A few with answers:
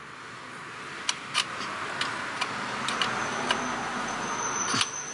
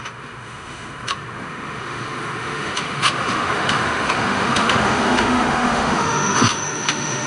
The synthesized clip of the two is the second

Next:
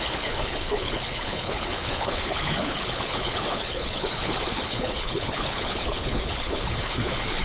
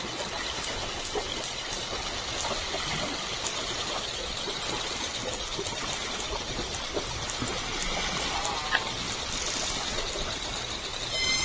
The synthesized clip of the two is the first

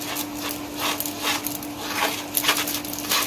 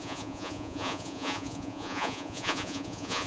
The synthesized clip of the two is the second